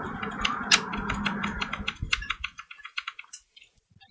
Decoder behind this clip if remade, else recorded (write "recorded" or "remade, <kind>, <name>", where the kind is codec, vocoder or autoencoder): recorded